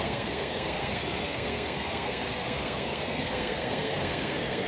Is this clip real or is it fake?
fake